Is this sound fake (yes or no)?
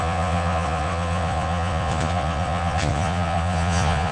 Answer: yes